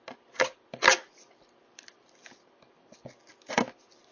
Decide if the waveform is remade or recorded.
recorded